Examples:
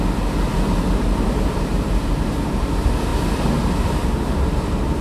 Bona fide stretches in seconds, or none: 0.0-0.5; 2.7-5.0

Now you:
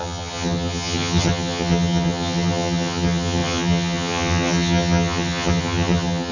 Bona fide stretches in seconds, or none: none

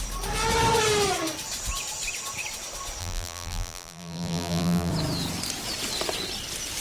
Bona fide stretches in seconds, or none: 0.0-3.0; 4.9-6.8

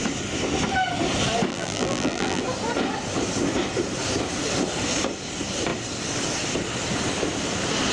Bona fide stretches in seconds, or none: 0.0-1.5; 2.4-7.9